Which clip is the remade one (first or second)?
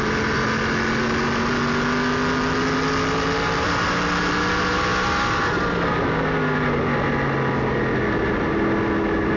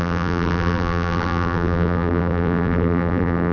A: second